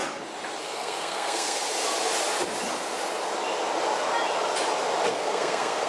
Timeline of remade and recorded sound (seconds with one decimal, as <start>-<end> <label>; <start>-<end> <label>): 0.0-0.6 recorded; 0.6-1.6 remade; 1.6-5.1 recorded; 5.1-5.9 remade